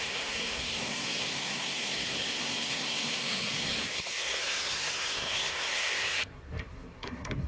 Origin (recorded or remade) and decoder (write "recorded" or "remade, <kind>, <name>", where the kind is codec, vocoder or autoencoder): remade, codec, SNAC